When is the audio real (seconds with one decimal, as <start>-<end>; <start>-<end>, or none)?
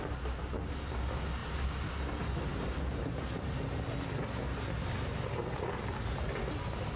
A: 0.0-1.4; 1.9-2.5; 3.8-7.0